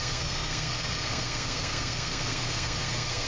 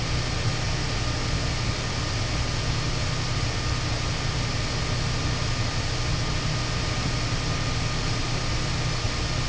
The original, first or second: second